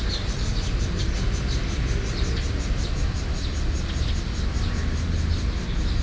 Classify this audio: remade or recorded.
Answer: recorded